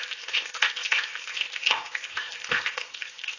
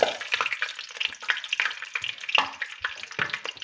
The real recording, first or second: second